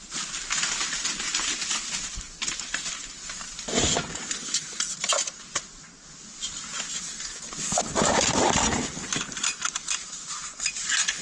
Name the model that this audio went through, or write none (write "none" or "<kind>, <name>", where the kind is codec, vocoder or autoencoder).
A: none